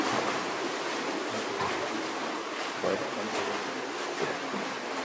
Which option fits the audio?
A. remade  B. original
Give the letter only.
B